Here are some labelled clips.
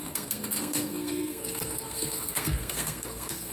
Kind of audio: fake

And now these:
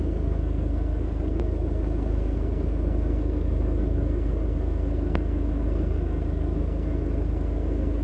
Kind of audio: fake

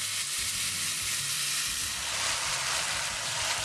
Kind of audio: real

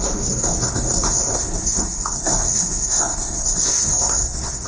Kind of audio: fake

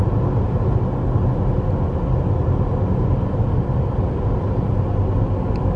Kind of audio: real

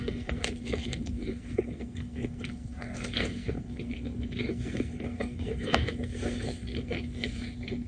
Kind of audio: fake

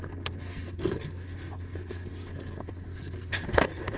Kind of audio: fake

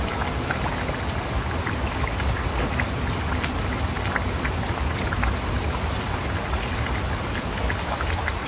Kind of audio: real